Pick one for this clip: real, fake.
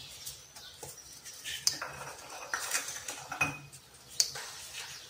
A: real